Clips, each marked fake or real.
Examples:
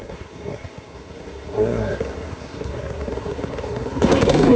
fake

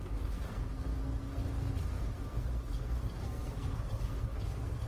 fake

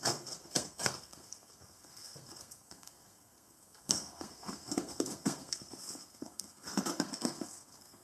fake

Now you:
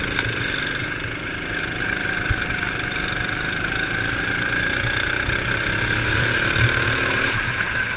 real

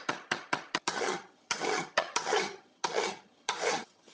fake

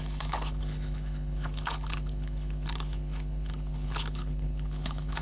fake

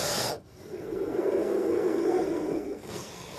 fake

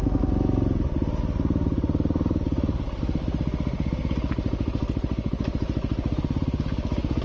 real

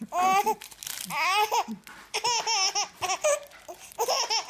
real